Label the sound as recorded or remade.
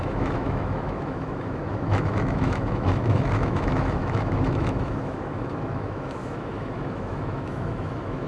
remade